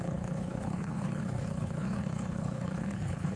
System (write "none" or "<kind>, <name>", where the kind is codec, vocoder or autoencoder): codec, HILCodec